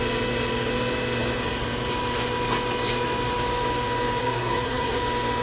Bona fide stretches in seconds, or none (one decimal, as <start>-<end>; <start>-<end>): 0.0-4.2; 5.0-5.4